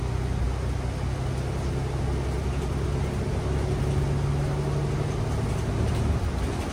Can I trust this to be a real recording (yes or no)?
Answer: yes